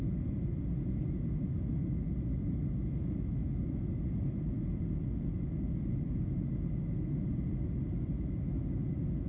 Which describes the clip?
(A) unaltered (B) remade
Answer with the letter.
A